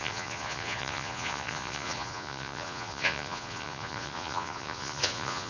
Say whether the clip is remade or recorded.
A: remade